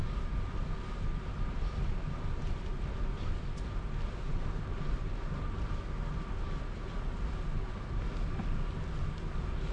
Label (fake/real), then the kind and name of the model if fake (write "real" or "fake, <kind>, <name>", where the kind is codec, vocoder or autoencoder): real